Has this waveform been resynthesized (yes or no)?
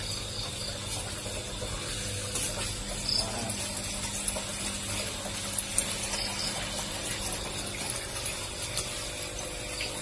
no